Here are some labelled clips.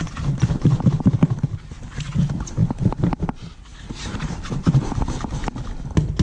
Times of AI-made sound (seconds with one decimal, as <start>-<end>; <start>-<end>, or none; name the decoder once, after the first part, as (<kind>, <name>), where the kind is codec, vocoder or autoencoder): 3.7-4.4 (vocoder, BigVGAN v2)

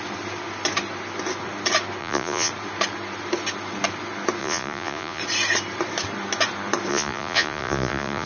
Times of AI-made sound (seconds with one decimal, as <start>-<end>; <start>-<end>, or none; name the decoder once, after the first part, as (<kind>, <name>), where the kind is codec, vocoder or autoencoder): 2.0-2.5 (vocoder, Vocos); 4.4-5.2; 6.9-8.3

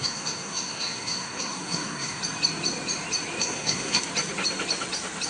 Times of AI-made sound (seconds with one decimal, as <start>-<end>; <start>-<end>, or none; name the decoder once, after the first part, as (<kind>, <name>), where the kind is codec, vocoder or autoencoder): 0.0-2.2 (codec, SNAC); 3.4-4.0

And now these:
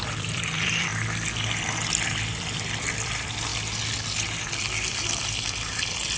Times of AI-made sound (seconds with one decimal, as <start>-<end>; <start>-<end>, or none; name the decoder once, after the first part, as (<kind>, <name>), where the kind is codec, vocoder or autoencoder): 0.0-0.9 (vocoder, BigVGAN v2); 2.2-3.5